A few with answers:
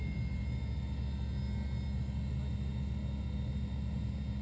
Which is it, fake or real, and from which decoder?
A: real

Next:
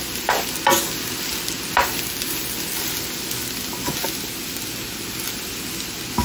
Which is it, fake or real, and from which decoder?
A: real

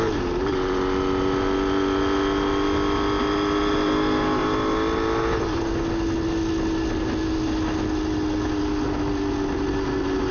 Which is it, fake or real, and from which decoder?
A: real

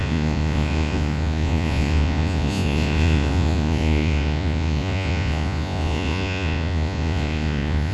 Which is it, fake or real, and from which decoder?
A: fake, vocoder, Vocos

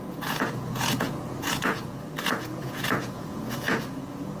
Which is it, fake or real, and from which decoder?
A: fake, vocoder, Vocos